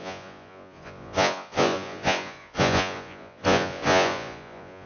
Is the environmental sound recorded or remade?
remade